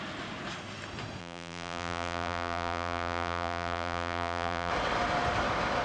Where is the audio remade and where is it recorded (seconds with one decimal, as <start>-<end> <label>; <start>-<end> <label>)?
0.0-1.2 recorded; 1.2-4.7 remade; 4.7-5.8 recorded